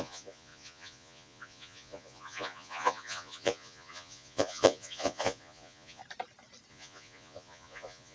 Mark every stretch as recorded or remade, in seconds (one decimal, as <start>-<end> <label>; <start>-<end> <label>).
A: 0.0-6.0 remade; 6.0-6.7 recorded; 6.7-8.1 remade